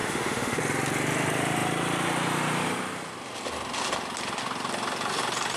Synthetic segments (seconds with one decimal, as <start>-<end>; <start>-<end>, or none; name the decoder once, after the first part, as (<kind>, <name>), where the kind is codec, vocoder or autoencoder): 0.0-0.6 (autoencoder, DAC-VAE)